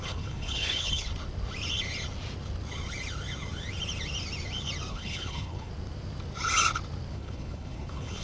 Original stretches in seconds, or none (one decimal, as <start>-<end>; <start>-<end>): 1.1-4.9; 5.7-7.1